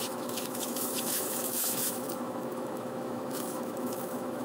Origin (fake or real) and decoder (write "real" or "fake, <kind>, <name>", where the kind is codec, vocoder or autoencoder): fake, autoencoder, DAC-VAE